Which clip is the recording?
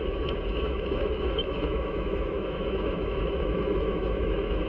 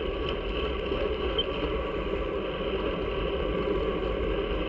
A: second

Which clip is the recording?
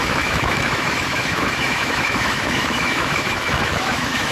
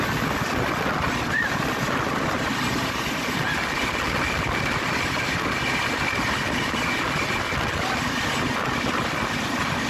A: second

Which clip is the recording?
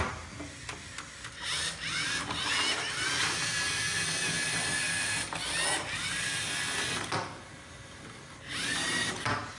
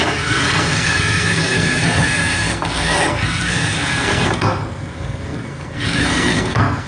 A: first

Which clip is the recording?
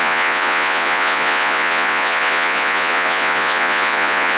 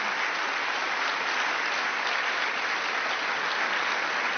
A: second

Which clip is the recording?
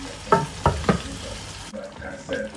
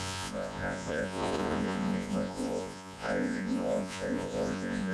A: first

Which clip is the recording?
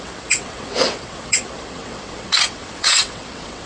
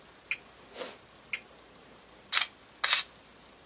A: second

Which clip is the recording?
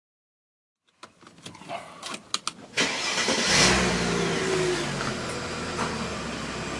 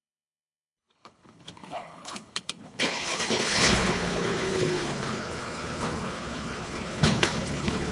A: first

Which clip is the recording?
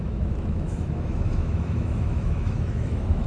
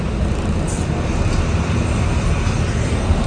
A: second